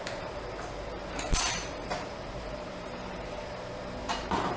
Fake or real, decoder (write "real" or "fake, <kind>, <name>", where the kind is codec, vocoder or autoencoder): fake, vocoder, BigVGAN v2